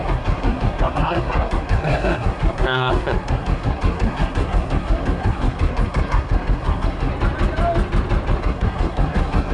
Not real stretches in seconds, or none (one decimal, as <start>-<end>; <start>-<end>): 0.0-7.1; 8.4-9.5

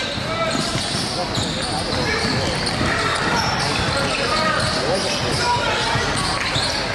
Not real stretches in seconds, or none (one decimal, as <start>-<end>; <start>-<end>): none

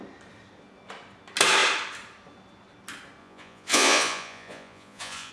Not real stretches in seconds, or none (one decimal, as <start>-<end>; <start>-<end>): 3.2-5.3

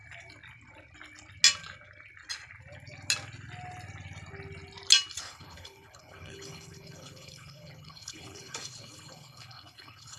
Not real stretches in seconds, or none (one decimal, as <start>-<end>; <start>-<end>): 5.2-10.2

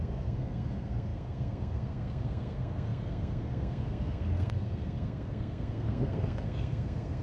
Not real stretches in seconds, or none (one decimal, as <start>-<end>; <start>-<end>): 0.0-7.2

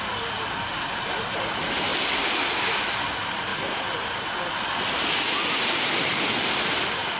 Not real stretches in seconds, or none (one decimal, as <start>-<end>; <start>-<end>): none

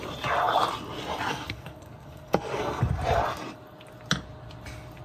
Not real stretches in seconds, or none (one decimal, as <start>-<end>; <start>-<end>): 1.3-2.8